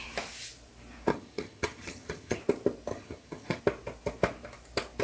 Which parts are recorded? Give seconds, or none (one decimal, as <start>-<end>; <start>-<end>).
0.0-1.1; 2.4-2.9; 3.6-5.0